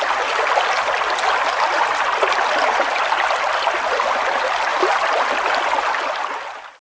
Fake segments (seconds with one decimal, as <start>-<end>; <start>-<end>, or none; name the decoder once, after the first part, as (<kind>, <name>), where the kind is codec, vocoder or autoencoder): 1.4-2.3 (vocoder, BigVGAN v2)